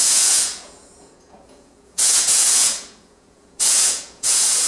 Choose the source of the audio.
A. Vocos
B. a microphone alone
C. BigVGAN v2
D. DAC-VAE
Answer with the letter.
A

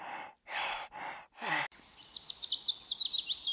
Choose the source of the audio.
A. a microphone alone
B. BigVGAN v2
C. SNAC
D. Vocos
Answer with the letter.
A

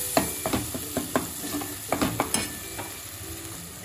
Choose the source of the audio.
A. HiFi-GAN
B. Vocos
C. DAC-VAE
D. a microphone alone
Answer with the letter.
D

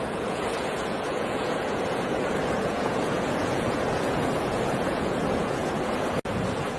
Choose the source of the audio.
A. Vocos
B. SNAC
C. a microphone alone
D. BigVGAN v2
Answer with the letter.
A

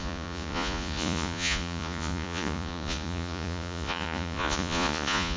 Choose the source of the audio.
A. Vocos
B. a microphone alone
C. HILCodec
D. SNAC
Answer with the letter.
A